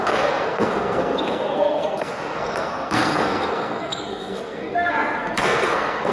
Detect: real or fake fake